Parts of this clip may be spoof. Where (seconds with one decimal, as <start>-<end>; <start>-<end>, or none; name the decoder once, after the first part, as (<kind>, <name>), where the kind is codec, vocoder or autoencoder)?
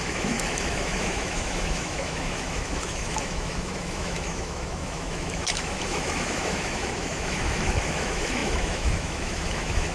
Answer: 0.0-9.9 (autoencoder, DAC-VAE)